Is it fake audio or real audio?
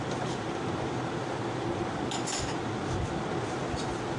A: real